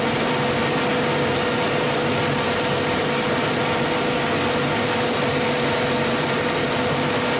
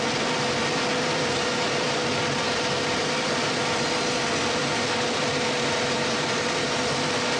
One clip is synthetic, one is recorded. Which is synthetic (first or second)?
second